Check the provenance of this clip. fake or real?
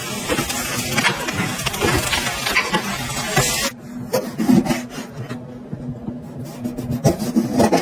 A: real